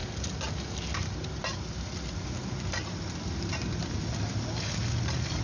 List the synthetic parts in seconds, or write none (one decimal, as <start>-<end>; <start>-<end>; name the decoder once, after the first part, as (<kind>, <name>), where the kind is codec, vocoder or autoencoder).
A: none